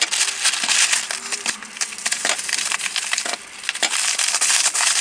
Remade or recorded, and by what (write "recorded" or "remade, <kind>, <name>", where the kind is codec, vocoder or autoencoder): recorded